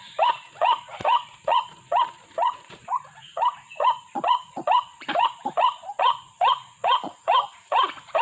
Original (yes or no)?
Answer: no